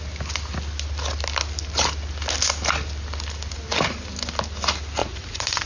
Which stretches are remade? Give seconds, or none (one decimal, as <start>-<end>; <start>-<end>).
5.0-5.7

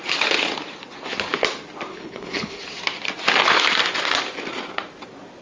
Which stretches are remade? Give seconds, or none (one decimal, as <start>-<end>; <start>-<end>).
1.9-2.6

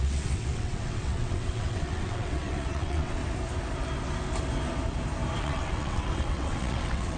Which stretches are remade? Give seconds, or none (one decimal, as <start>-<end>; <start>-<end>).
0.0-3.2; 5.4-7.2

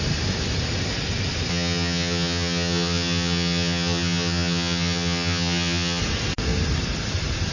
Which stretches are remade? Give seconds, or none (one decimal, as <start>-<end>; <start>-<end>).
1.5-6.0

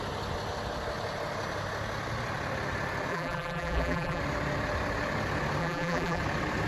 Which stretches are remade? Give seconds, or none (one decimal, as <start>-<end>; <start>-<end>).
3.1-4.2; 5.6-6.2

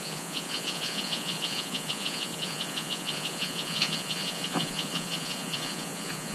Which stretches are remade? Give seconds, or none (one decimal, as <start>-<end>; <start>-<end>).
0.0-6.3